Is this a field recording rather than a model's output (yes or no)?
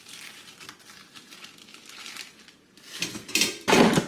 yes